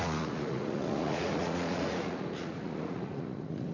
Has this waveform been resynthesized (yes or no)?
yes